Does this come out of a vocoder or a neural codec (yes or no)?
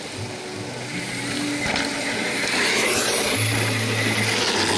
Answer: no